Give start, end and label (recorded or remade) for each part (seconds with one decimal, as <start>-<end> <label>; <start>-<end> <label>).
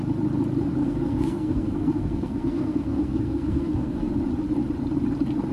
0.0-0.8 recorded; 0.8-4.1 remade; 4.1-5.5 recorded